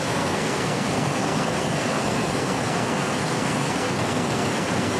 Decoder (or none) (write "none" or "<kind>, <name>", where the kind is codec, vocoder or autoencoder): codec, SNAC